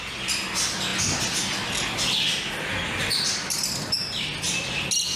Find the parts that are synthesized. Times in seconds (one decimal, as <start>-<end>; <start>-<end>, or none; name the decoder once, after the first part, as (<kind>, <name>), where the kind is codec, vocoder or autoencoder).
none